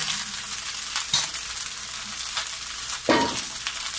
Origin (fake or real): real